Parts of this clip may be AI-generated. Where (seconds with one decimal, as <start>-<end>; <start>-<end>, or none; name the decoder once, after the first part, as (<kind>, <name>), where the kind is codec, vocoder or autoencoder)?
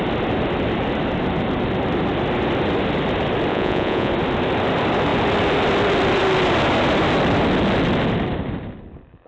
3.5-4.1 (vocoder, Vocos)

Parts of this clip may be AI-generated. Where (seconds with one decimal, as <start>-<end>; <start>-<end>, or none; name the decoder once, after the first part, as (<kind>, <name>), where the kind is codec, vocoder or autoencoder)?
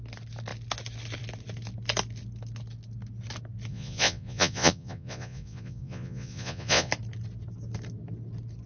3.7-6.9 (vocoder, Vocos)